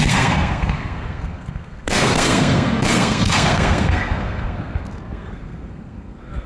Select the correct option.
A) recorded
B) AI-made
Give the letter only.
B